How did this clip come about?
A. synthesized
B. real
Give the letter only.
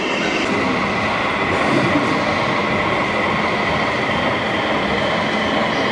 B